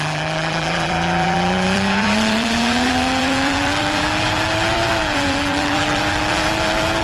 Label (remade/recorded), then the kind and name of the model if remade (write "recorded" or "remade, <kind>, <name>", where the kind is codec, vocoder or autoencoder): remade, vocoder, BigVGAN v2